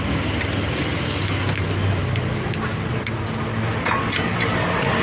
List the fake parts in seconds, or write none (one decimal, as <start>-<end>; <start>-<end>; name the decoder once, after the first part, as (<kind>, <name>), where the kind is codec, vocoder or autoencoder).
none

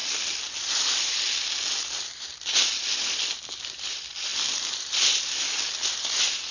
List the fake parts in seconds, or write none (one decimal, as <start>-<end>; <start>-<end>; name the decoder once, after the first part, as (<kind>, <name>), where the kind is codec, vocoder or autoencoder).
none